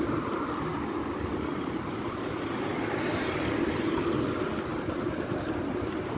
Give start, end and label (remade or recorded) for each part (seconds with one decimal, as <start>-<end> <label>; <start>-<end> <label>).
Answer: 0.0-4.7 recorded; 4.7-6.2 remade